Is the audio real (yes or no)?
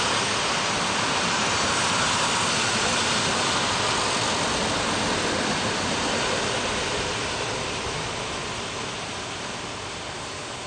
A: yes